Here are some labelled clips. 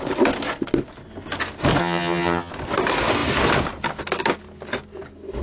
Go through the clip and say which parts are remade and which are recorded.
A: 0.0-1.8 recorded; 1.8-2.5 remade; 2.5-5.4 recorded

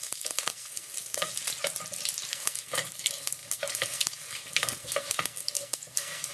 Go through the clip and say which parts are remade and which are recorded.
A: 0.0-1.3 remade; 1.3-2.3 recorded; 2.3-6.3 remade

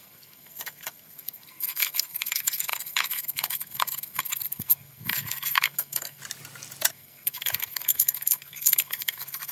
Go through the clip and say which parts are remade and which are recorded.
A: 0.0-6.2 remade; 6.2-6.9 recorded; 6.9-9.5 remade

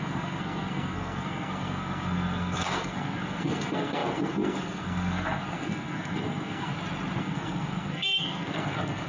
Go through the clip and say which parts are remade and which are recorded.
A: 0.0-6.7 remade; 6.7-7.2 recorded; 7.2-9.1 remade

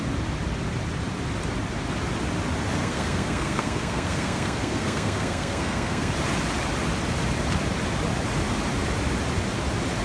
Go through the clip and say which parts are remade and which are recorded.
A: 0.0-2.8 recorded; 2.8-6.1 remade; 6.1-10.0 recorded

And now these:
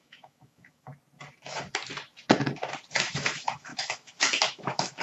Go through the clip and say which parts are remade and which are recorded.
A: 0.0-0.9 remade; 0.9-2.9 recorded; 2.9-5.0 remade

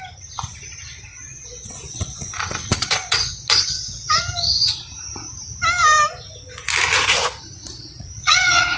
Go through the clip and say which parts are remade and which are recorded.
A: 0.0-1.1 recorded; 1.1-4.1 remade; 4.1-7.6 recorded; 7.6-8.8 remade

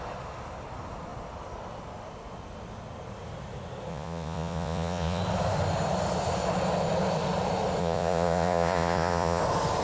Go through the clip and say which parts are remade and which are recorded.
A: 0.0-3.9 recorded; 3.9-5.2 remade; 5.2-7.8 recorded; 7.8-9.4 remade; 9.4-9.8 recorded